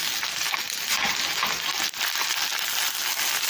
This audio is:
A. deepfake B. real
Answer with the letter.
B